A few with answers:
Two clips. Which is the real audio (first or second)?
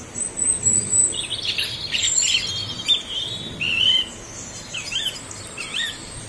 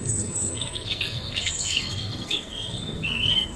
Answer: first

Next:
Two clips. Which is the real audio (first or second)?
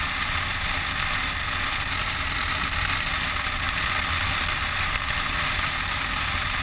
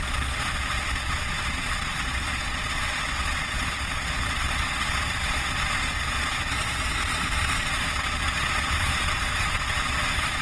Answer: first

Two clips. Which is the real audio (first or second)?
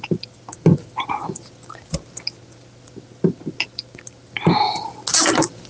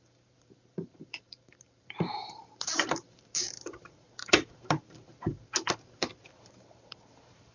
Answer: first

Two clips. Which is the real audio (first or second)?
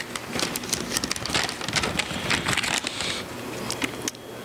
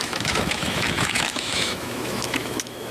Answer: first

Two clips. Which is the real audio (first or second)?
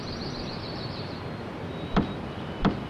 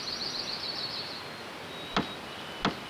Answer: second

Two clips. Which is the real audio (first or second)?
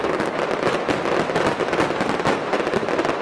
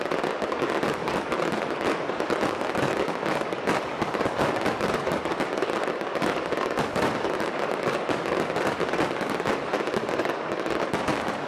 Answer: first